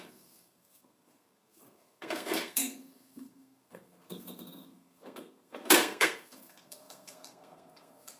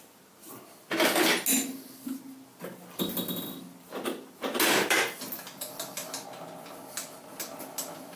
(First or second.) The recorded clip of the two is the second